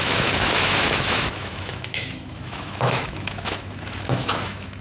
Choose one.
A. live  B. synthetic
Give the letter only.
B